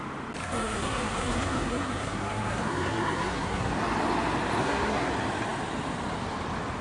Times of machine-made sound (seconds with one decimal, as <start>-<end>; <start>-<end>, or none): 0.4-3.7; 4.6-5.1